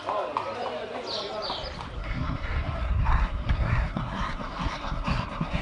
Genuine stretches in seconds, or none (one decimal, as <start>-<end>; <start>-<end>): 0.0-2.0

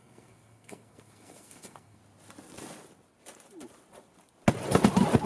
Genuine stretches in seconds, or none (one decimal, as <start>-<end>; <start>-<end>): 2.0-5.3

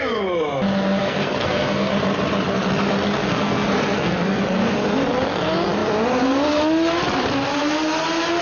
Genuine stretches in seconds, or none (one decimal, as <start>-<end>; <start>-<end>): 0.0-1.0; 1.9-3.2; 4.4-8.4

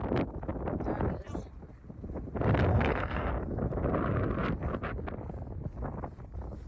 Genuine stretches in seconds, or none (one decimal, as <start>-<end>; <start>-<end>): 0.0-2.7; 3.3-6.7

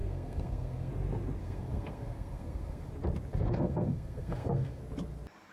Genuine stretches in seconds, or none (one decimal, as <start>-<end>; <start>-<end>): 0.9-1.4; 2.9-3.3; 4.8-5.5

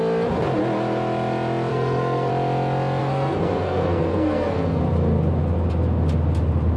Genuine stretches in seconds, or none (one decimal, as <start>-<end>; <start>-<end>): 0.0-1.7; 2.3-3.0; 4.8-6.8

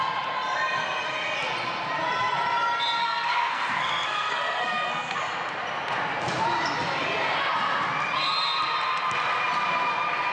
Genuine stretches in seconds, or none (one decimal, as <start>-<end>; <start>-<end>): 0.0-3.0; 5.2-10.3